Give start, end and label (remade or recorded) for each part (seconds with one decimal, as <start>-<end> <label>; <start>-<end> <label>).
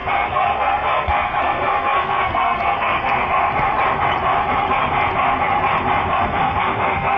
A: 0.0-3.2 remade; 3.2-6.2 recorded; 6.2-7.2 remade